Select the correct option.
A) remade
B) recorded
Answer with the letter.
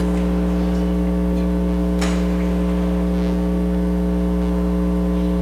B